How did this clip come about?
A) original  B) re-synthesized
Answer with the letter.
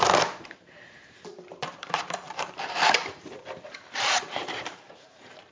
B